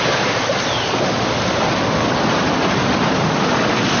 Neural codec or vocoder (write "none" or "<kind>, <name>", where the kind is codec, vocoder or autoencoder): none